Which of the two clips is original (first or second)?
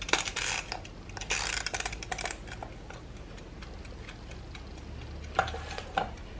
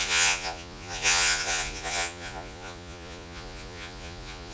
first